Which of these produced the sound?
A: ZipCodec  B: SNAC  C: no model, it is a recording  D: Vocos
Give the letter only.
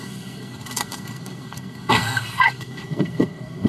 B